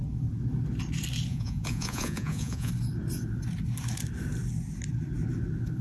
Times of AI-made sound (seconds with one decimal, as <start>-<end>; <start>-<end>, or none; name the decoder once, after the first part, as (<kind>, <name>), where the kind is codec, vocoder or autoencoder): 1.3-2.7 (vocoder, Vocos)